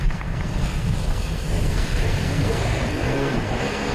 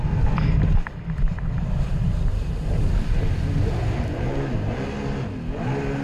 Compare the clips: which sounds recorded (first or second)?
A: second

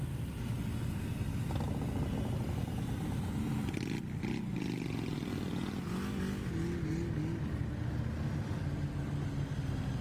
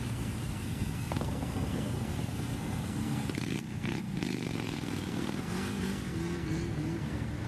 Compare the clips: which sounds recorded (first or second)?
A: first